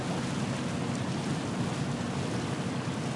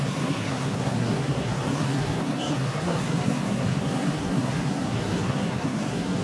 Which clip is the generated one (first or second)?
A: second